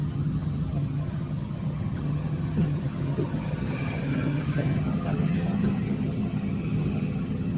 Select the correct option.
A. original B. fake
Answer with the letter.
B